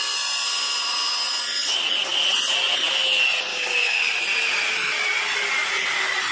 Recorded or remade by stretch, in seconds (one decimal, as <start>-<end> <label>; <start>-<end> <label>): 0.0-3.5 recorded; 3.5-4.1 remade; 4.1-6.3 recorded